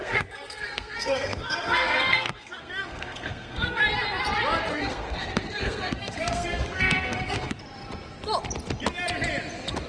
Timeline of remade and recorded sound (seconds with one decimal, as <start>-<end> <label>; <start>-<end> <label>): 0.0-3.8 remade; 3.8-4.7 recorded; 4.7-7.5 remade; 7.5-9.9 recorded